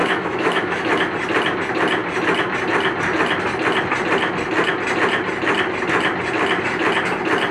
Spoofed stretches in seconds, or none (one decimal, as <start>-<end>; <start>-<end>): 0.0-1.0